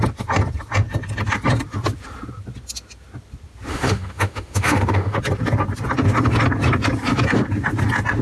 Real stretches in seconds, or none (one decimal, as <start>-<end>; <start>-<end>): 0.0-3.7; 5.2-8.2